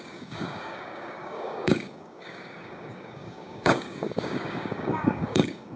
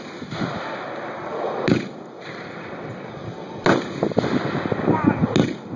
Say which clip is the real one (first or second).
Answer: second